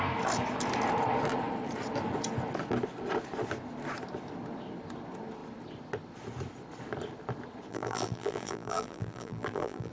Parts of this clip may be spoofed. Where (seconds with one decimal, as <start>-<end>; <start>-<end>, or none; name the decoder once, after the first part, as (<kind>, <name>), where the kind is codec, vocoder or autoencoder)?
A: 7.7-9.9 (vocoder, BigVGAN v2)